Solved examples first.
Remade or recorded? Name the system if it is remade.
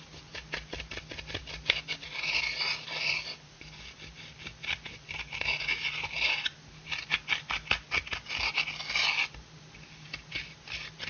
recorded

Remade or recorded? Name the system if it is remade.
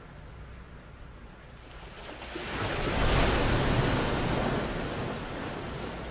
recorded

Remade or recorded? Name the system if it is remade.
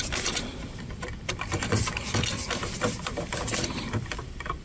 remade, vocoder, BigVGAN v2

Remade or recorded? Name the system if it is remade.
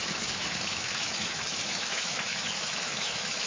remade, autoencoder, DAC-VAE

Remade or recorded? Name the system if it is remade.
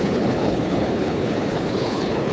remade, codec, HILCodec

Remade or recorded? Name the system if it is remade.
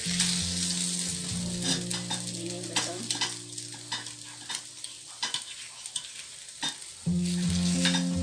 recorded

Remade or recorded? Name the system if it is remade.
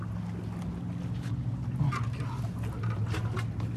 recorded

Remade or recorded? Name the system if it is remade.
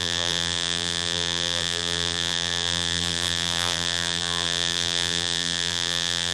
remade, vocoder, BigVGAN v2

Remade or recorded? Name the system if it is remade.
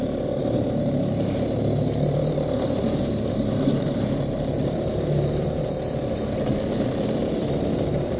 remade, vocoder, BigVGAN v2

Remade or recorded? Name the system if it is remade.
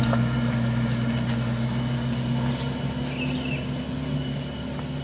recorded